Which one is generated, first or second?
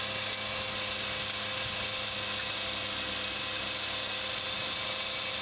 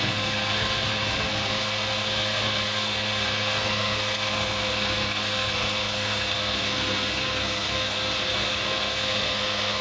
second